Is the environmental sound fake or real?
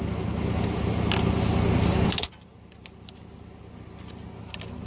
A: real